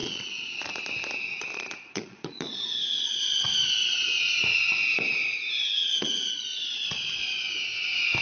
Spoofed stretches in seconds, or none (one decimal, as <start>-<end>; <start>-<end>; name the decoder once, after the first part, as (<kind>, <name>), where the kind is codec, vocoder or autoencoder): 0.0-0.7 (vocoder, Vocos); 1.5-3.7; 5.8-7.4